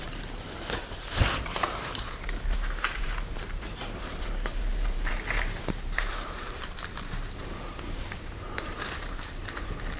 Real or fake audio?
fake